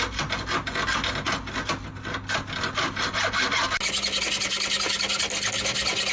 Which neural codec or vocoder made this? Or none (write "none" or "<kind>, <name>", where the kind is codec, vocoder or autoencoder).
none